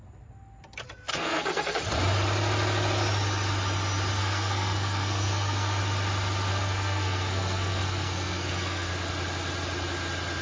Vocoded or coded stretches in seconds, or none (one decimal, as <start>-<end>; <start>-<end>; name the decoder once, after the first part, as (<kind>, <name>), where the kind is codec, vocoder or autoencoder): 1.1-1.8 (codec, SNAC); 4.1-5.8; 6.5-8.9